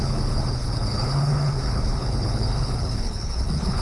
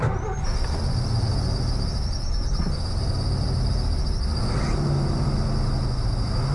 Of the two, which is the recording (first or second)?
second